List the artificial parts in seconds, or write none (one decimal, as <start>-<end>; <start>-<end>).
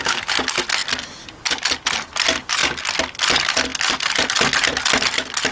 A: none